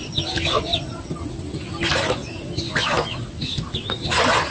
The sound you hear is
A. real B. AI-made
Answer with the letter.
A